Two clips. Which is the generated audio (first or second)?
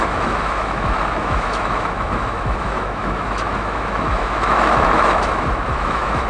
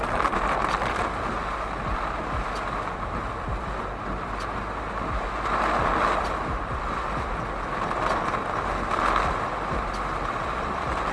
first